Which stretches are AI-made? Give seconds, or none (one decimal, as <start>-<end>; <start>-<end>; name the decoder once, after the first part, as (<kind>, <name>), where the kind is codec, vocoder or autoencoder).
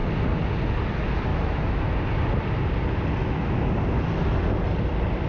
1.3-1.8 (autoencoder, DAC-VAE); 3.2-3.7